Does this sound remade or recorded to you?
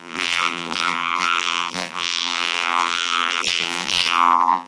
remade